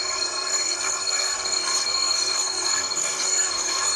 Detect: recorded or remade remade